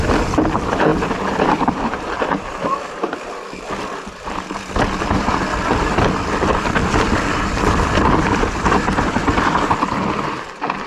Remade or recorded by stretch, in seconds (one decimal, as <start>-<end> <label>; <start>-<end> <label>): 0.0-10.9 recorded